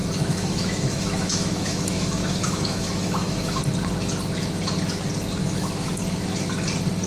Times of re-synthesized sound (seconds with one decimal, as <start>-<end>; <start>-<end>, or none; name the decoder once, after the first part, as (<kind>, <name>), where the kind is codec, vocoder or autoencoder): 0.0-3.6 (autoencoder, DAC-VAE); 5.4-5.9

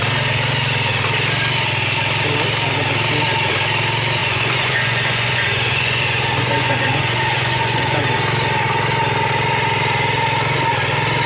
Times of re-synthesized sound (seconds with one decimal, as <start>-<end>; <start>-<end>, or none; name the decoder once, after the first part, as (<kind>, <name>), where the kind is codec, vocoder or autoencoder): 4.2-8.0 (vocoder, Vocos)